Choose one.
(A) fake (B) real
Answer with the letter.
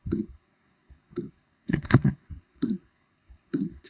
A